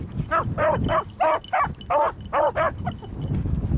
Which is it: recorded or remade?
recorded